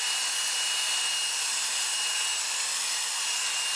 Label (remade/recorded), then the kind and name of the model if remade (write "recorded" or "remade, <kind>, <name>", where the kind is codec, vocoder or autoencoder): recorded